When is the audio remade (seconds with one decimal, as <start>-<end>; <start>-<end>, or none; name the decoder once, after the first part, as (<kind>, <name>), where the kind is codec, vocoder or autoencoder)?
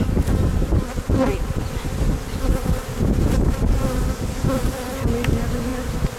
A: 5.7-6.2 (vocoder, BigVGAN v2)